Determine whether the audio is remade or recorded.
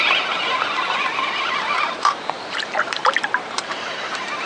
remade